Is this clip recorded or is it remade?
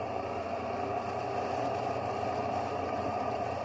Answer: recorded